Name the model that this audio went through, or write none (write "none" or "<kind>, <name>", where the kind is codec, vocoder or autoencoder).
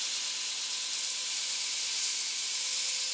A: none